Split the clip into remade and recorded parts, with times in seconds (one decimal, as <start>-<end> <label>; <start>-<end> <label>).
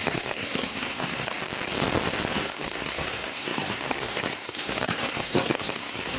0.0-1.4 remade; 1.4-2.3 recorded; 2.3-6.2 remade